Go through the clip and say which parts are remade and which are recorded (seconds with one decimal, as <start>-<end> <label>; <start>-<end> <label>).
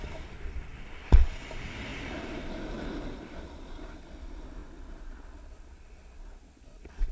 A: 0.0-7.1 recorded